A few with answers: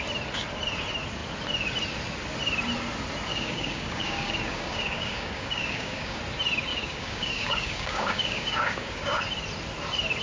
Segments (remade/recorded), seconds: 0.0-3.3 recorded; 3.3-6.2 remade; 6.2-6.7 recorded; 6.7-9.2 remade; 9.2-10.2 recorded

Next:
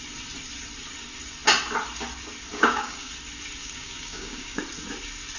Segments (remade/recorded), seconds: 0.0-2.5 recorded; 2.5-3.1 remade; 3.1-3.6 recorded; 3.6-4.6 remade; 4.6-5.4 recorded

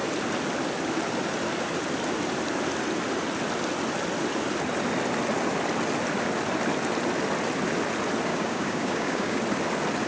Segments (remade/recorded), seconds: 0.0-8.3 recorded; 8.3-9.4 remade; 9.4-10.1 recorded

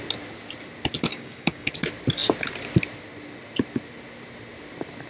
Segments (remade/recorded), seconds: 0.0-1.1 recorded; 1.1-1.7 remade; 1.7-5.1 recorded

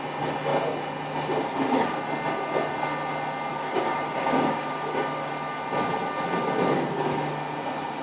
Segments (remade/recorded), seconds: 0.0-3.5 recorded; 3.5-5.3 remade; 5.3-8.0 recorded